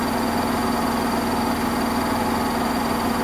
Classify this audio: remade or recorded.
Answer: recorded